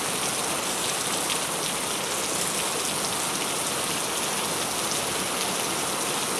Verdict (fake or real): real